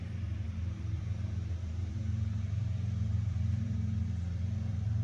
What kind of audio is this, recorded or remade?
remade